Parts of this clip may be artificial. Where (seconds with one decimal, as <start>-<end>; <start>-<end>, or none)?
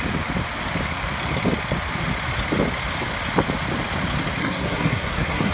4.4-5.5